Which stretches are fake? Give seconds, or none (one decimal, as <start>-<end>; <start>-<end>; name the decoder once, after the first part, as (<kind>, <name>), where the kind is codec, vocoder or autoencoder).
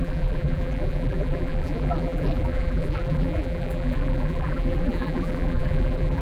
0.0-6.2 (vocoder, BigVGAN v2)